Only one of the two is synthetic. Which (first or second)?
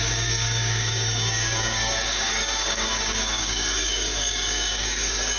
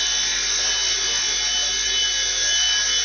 first